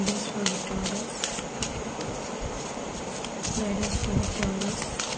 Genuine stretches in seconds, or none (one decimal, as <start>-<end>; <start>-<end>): 0.0-5.2

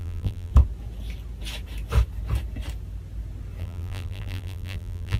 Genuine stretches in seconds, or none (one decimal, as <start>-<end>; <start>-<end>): 0.5-3.6